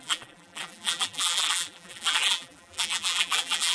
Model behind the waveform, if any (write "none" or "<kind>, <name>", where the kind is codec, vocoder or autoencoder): vocoder, BigVGAN v2